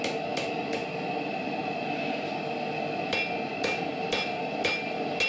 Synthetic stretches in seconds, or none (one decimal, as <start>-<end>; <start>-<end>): none